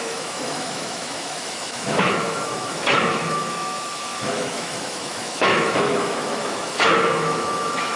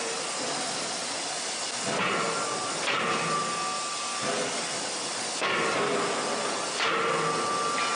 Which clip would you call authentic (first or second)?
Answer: second